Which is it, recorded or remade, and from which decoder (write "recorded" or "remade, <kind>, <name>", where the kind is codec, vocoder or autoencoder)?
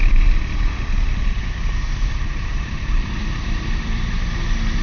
remade, vocoder, BigVGAN v2